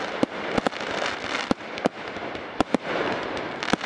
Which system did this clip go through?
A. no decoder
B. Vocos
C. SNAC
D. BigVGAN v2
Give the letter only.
D